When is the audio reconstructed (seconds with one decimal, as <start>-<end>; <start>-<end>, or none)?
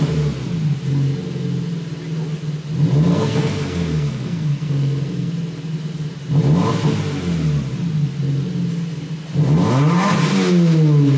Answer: 3.1-5.3